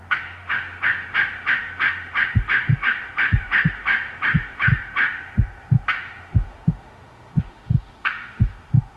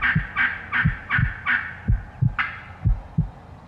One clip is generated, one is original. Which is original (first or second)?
second